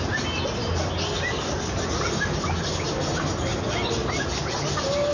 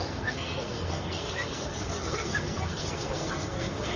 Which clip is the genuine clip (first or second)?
first